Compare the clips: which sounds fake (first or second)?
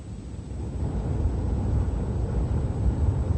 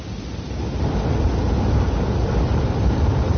second